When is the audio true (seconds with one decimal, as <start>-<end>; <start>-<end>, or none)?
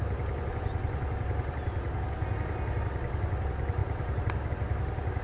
0.0-3.8; 4.5-5.2